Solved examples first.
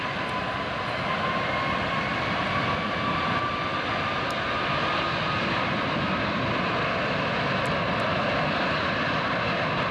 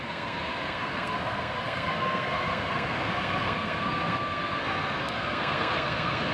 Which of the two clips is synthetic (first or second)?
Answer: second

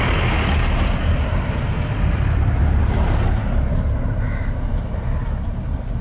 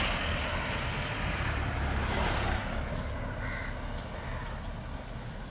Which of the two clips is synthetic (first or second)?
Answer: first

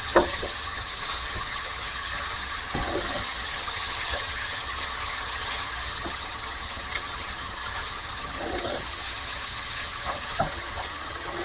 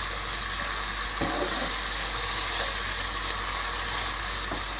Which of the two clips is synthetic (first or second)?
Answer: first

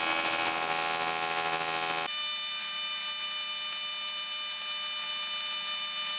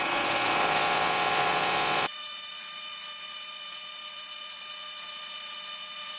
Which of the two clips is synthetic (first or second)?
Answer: second